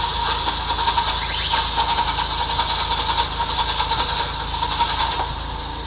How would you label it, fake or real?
real